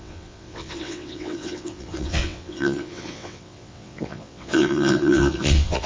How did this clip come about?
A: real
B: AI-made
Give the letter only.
B